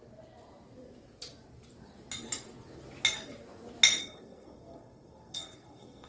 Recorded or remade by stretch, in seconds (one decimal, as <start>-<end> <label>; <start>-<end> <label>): 0.0-4.0 recorded; 4.0-6.1 remade